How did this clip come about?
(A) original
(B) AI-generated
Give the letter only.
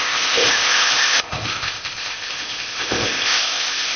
B